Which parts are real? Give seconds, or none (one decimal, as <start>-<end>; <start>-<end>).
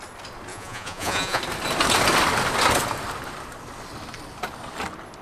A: 0.0-0.5; 1.4-5.2